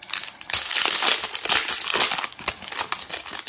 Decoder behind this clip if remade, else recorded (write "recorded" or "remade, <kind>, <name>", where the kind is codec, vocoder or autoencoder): recorded